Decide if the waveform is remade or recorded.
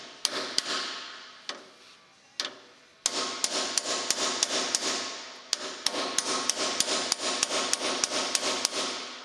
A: recorded